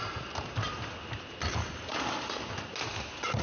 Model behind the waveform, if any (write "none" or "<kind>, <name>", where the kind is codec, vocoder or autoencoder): none